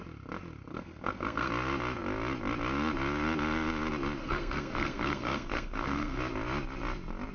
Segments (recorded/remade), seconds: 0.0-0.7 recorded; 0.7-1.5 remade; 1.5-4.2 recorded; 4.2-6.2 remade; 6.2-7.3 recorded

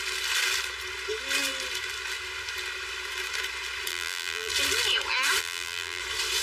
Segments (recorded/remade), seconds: 0.0-3.9 recorded; 3.9-4.5 remade; 4.5-5.4 recorded; 5.4-6.0 remade; 6.0-6.4 recorded